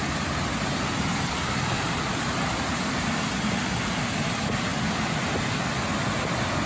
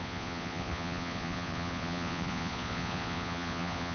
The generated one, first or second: second